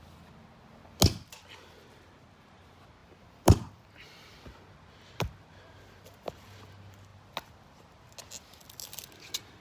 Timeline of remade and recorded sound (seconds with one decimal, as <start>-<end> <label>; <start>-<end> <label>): 0.0-3.0 recorded; 3.0-4.4 remade; 4.4-9.6 recorded